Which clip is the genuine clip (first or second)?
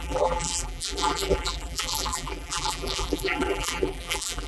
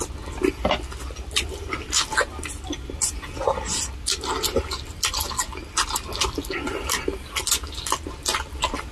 second